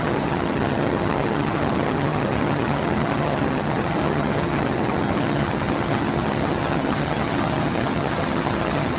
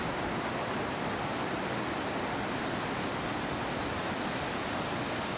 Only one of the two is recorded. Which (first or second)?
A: second